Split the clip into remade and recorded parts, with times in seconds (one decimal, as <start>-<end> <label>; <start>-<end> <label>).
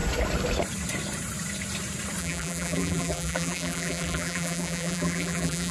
0.0-2.2 recorded; 2.2-5.7 remade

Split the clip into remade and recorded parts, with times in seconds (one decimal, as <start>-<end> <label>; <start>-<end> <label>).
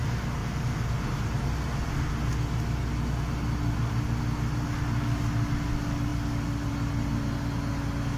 0.0-0.4 recorded; 0.4-2.1 remade; 2.1-8.2 recorded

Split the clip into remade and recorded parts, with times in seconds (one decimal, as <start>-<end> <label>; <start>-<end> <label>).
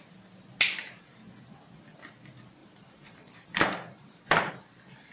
0.0-2.6 recorded; 2.6-4.5 remade; 4.5-5.1 recorded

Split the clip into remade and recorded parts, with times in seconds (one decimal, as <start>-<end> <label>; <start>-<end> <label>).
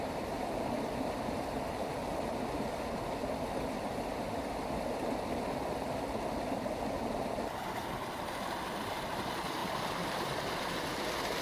0.0-11.4 recorded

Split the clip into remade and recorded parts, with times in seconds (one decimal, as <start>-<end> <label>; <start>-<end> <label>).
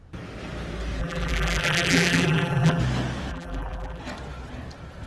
0.0-1.0 recorded; 1.0-2.8 remade; 2.8-3.3 recorded; 3.3-4.0 remade; 4.0-5.1 recorded